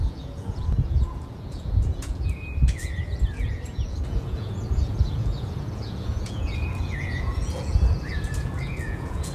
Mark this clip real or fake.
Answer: fake